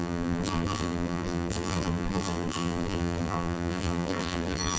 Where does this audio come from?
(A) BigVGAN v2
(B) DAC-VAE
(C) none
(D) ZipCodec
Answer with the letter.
A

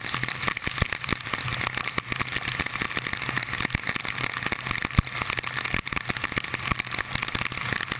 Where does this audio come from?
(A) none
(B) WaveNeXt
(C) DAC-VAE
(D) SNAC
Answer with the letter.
A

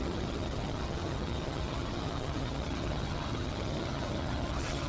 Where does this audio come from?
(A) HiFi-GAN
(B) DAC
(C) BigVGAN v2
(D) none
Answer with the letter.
A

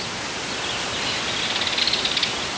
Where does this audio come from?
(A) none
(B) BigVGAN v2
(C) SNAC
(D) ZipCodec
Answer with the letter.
A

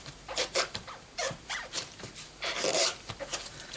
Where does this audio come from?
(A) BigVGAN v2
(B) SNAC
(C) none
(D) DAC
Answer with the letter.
A